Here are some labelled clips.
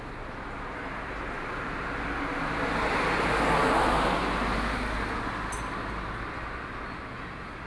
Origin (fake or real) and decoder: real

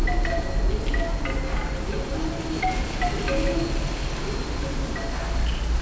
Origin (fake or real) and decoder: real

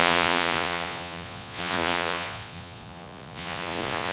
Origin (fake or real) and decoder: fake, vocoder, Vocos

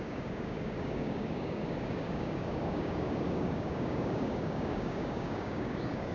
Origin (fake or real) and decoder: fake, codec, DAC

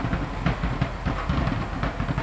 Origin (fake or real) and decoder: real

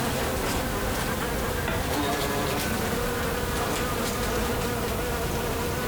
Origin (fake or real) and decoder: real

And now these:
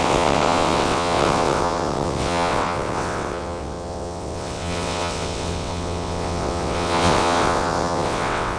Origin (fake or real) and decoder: fake, vocoder, WaveNeXt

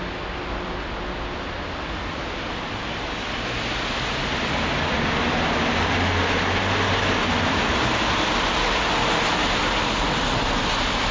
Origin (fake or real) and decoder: real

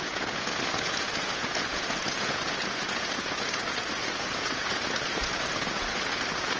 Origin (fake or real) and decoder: fake, vocoder, Vocos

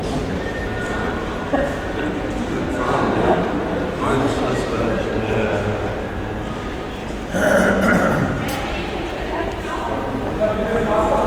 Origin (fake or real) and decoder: real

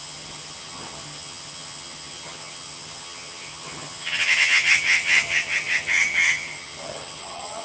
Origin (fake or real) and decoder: fake, vocoder, HiFi-GAN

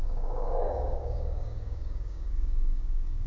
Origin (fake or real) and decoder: fake, codec, DAC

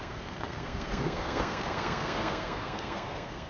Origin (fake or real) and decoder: fake, codec, SNAC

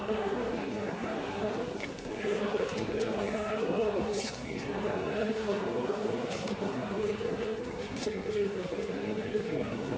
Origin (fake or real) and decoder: fake, codec, SNAC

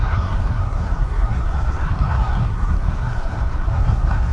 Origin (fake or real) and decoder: fake, codec, SNAC